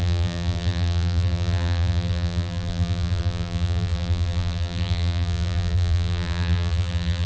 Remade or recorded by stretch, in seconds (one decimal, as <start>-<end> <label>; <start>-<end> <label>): 0.0-7.3 remade